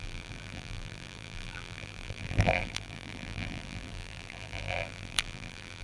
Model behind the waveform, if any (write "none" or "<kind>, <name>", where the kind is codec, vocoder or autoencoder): vocoder, BigVGAN v2